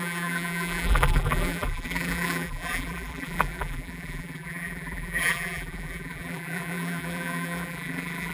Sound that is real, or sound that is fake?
fake